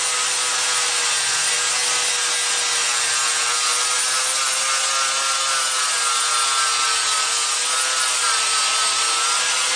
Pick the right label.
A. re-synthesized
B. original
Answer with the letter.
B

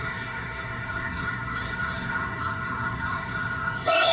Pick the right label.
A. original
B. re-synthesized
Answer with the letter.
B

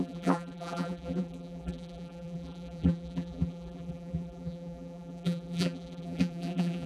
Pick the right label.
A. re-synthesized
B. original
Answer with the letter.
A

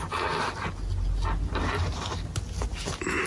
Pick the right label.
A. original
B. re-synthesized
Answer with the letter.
A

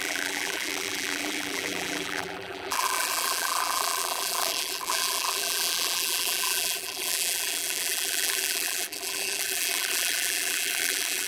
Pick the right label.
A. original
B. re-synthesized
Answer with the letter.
B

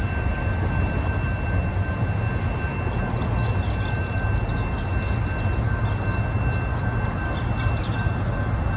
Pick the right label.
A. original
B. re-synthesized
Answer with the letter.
A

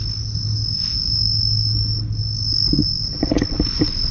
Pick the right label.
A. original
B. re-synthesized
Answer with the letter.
A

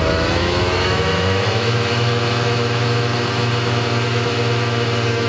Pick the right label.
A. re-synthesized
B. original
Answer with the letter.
A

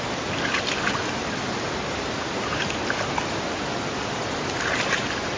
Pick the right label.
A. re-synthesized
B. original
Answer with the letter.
B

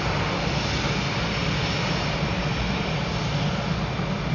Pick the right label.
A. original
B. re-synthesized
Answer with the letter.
A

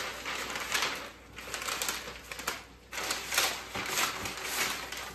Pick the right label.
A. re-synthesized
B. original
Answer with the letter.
B